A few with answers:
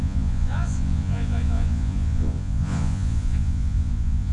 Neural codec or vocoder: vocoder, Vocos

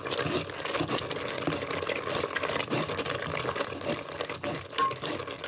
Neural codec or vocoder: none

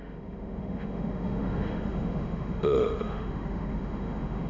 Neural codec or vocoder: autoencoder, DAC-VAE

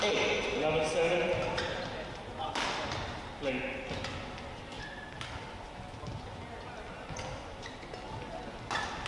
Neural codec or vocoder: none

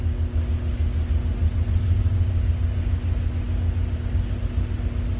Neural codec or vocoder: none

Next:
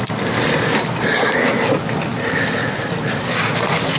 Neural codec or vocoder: none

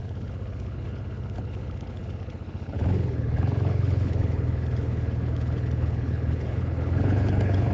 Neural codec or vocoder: codec, HILCodec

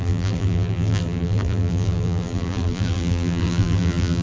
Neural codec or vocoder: vocoder, BigVGAN v2